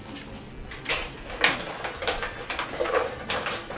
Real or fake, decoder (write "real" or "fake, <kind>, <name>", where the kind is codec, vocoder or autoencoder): real